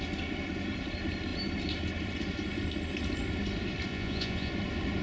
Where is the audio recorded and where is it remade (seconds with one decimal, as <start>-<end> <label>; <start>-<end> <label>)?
0.0-3.9 recorded; 3.9-4.5 remade; 4.5-5.0 recorded